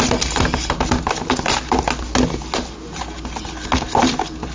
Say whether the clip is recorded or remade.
recorded